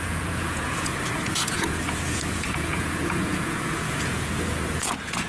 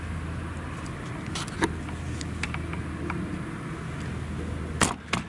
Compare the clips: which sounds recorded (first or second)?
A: second